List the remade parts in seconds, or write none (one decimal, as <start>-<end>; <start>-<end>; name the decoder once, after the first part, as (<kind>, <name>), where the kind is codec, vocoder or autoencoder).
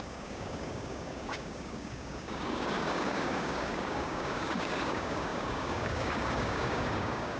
0.0-7.4 (codec, DAC)